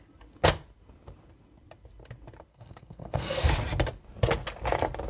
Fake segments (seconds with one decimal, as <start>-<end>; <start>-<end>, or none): 2.5-3.5